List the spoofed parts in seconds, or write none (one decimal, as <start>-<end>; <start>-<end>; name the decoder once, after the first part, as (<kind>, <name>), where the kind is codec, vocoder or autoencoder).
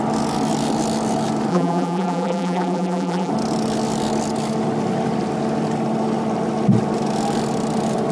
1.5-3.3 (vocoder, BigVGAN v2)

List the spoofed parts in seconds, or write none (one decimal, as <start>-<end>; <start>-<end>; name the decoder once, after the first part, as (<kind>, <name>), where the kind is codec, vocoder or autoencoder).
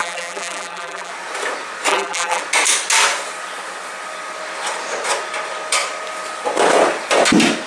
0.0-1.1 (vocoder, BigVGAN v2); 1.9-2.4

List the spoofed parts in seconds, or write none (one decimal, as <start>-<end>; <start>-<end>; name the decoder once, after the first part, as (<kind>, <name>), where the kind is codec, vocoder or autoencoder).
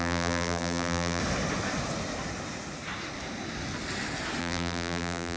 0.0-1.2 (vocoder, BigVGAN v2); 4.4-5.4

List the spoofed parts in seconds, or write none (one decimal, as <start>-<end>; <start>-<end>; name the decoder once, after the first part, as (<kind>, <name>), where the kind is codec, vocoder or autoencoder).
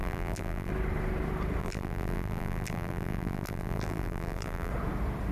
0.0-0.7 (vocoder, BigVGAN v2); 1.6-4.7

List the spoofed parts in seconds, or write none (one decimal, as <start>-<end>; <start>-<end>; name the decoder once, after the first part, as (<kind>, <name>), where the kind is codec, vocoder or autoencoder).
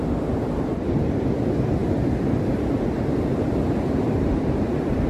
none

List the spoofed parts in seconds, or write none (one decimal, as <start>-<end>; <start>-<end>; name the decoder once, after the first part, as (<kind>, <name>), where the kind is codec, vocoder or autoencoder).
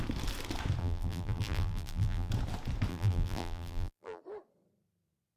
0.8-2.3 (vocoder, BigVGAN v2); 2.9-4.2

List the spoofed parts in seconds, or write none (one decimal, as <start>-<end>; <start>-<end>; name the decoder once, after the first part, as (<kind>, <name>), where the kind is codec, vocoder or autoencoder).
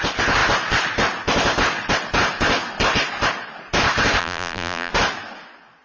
4.2-4.9 (vocoder, BigVGAN v2)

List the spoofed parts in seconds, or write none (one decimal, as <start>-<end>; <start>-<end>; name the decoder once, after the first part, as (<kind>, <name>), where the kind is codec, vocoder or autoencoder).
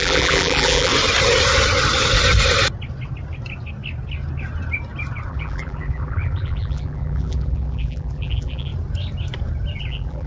0.0-0.9 (vocoder, BigVGAN v2); 5.3-8.7; 9.8-10.3